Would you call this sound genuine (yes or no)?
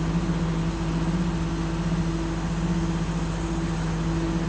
yes